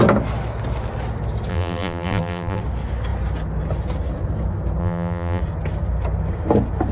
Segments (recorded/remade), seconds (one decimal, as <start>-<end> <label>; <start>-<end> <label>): 0.0-1.5 recorded; 1.5-2.6 remade; 2.6-4.8 recorded; 4.8-5.4 remade; 5.4-6.9 recorded